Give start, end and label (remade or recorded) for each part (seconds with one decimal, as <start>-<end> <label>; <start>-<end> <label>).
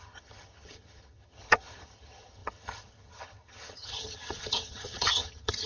0.0-5.7 remade